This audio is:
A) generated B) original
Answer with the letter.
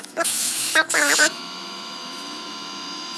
A